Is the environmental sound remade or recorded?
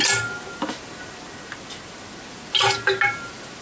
recorded